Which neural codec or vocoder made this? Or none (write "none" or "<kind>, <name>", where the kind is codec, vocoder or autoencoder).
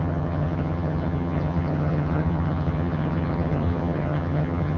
vocoder, HiFi-GAN